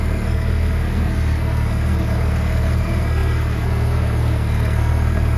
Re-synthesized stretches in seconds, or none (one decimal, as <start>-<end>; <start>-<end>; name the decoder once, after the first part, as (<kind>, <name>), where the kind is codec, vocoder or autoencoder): 0.0-5.4 (codec, SNAC)